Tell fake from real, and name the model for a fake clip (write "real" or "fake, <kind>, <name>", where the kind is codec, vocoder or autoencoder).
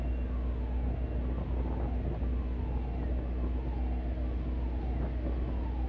real